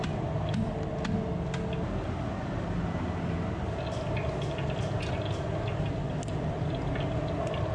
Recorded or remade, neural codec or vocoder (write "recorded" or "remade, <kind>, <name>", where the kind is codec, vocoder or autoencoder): recorded